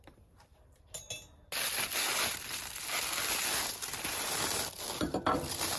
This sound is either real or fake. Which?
real